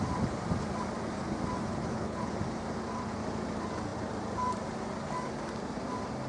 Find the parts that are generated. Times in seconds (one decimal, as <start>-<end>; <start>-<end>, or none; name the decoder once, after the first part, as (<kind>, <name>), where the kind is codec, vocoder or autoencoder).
1.7-2.3 (codec, HILCodec)